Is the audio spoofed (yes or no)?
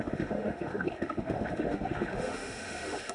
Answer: yes